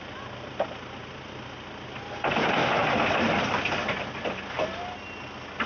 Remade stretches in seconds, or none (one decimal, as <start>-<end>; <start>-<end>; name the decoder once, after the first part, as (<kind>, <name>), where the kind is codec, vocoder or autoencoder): none